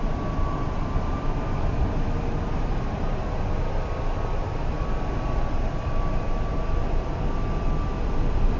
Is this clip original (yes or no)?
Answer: yes